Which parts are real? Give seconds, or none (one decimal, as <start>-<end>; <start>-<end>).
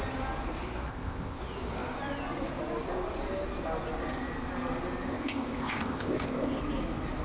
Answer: 0.0-0.9; 1.4-5.1; 6.6-7.2